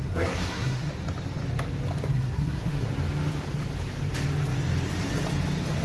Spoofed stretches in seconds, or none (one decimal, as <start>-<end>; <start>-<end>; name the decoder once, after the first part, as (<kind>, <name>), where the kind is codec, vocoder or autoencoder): 0.0-0.9 (codec, SNAC); 2.1-2.9